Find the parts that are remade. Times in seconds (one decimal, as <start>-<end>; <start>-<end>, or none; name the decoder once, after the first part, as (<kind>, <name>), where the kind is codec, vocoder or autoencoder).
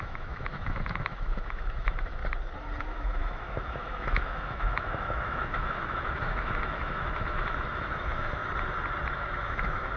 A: 0.0-2.2 (autoencoder, DAC-VAE); 2.8-8.4; 9.1-10.0